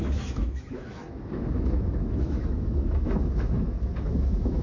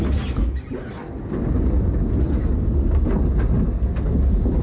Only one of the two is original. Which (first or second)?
second